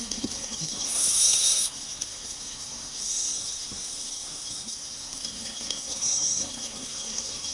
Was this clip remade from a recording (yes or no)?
yes